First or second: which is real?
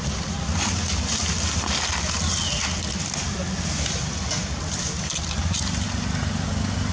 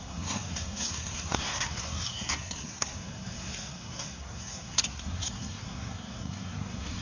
first